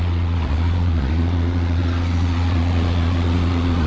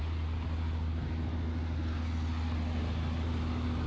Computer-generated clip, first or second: first